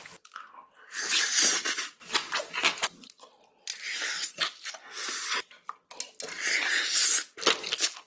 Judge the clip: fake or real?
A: real